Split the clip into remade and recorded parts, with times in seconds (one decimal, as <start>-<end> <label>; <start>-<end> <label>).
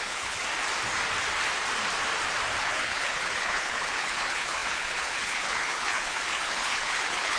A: 0.0-0.4 remade; 0.4-2.6 recorded; 2.6-7.4 remade